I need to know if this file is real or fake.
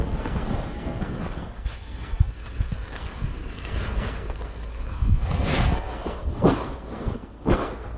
fake